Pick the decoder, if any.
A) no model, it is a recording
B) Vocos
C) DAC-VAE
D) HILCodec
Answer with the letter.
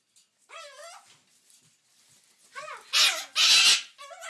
A